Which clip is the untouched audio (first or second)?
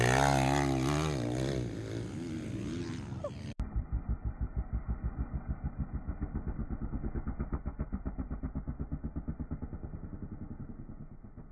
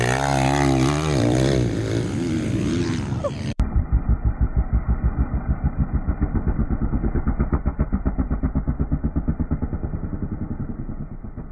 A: first